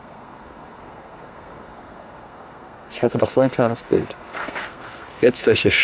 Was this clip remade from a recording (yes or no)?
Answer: yes